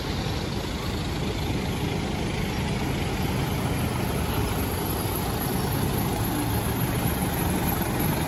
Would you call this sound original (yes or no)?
yes